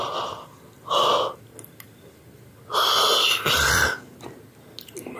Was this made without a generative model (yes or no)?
yes